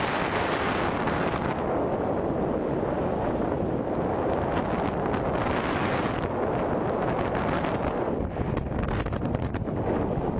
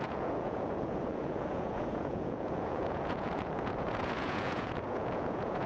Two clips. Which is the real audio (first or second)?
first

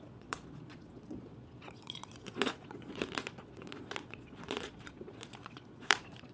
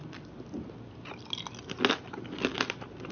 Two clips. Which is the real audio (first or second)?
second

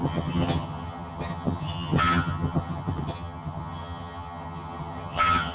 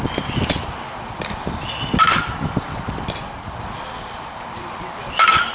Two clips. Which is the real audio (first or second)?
second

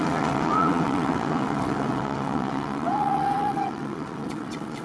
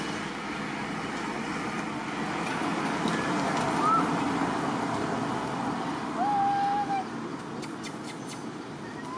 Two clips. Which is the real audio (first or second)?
second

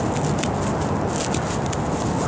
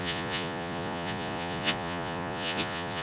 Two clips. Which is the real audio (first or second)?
first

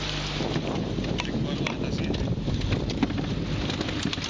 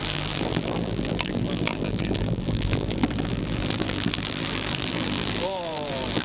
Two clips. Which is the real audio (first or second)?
first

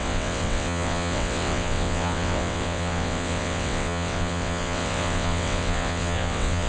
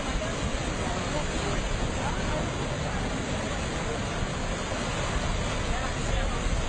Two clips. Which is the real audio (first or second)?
second